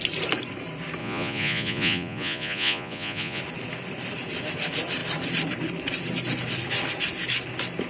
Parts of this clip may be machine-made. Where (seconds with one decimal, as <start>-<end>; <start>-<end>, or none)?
1.0-3.4

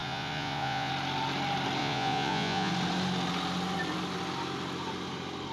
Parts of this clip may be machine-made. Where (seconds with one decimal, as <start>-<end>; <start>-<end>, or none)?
0.0-0.9; 1.8-2.7

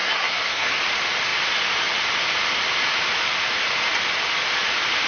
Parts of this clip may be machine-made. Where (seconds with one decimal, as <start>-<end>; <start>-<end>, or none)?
0.0-0.8

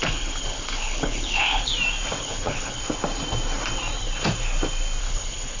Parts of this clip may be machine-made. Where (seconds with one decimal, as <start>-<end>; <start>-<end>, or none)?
0.0-1.7; 2.2-2.8; 5.0-5.6

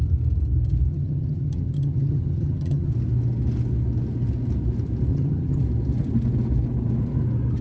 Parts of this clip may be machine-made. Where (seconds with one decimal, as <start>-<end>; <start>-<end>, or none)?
0.9-2.9; 5.1-5.6

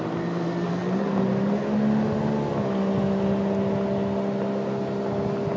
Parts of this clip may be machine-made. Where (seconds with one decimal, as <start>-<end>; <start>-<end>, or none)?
none